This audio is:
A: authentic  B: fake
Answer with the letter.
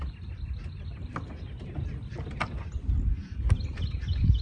A